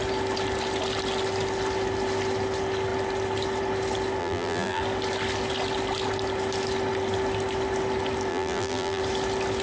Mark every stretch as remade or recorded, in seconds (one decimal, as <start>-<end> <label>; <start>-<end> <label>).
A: 0.0-4.2 recorded; 4.2-4.8 remade; 4.8-8.3 recorded; 8.3-9.0 remade; 9.0-9.6 recorded